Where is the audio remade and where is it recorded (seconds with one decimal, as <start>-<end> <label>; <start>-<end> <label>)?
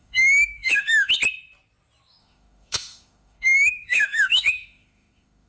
0.0-1.1 remade; 1.1-2.2 recorded; 2.2-5.5 remade